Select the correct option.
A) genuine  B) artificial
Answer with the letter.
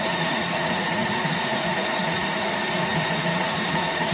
B